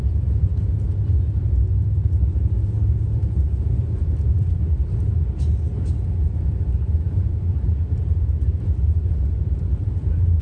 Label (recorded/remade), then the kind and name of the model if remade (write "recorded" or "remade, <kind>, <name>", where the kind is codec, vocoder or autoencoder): remade, vocoder, BigVGAN v2